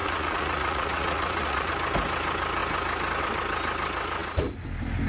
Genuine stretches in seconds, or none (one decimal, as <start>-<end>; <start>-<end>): 1.7-5.1